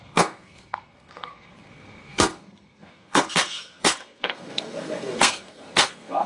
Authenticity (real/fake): fake